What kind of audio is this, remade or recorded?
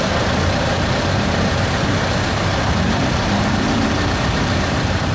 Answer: remade